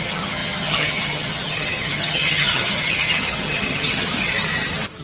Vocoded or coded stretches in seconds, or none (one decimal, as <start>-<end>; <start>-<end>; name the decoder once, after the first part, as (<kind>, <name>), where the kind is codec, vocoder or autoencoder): 0.0-4.1 (vocoder, HiFi-GAN)